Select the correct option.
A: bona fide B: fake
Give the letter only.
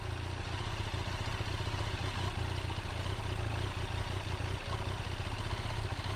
A